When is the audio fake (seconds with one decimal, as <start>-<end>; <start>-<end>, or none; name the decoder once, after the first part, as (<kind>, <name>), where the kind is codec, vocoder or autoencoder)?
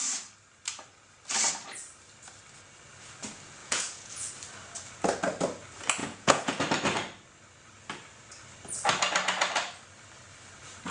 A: 3.6-4.3 (vocoder, Vocos); 6.0-6.5